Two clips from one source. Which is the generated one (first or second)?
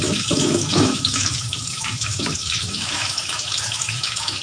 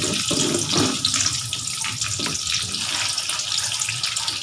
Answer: first